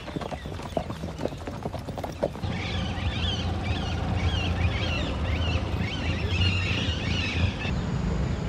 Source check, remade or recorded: recorded